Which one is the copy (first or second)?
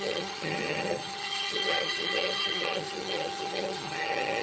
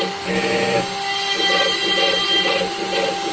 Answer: first